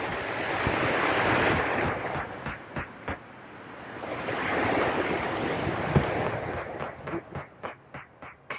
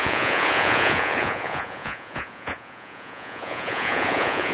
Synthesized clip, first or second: second